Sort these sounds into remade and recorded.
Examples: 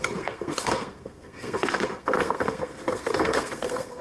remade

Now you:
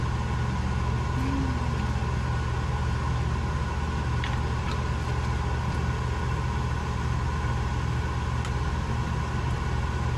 recorded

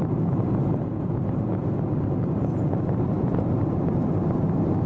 recorded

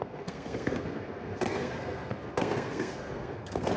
remade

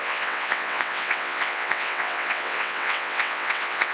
remade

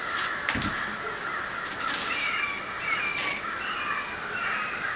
recorded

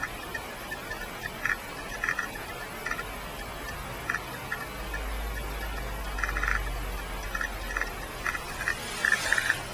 recorded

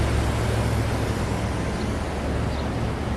recorded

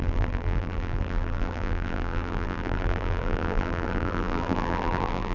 remade